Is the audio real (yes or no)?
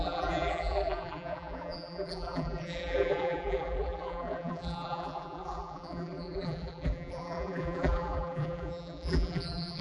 no